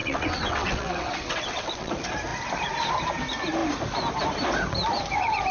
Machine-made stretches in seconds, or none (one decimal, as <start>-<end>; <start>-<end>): 0.0-1.9